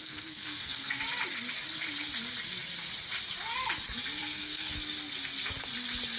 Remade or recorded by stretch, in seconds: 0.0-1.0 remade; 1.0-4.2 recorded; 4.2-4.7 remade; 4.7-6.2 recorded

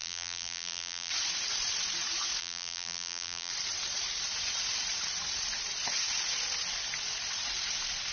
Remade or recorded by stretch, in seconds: 0.0-1.1 remade; 1.1-2.4 recorded; 2.4-3.5 remade; 3.5-8.1 recorded

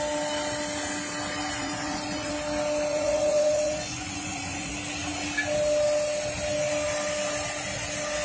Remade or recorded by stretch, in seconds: 0.0-1.6 recorded; 1.6-2.3 remade; 2.3-2.9 recorded; 2.9-4.7 remade; 4.7-8.2 recorded

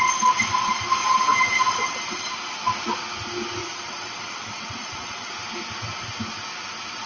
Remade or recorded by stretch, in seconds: 0.0-1.0 recorded; 1.0-2.3 remade; 2.3-3.6 recorded; 3.6-5.3 remade; 5.3-7.1 recorded

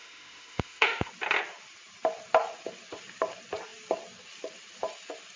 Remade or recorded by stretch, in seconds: 0.0-1.1 remade; 1.1-5.4 recorded